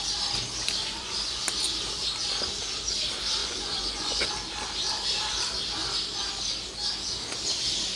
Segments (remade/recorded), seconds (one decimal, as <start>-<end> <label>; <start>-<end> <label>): 0.0-0.8 recorded; 0.8-1.4 remade; 1.4-3.4 recorded; 3.4-4.3 remade; 4.3-8.0 recorded